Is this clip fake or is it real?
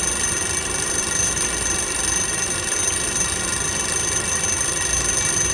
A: real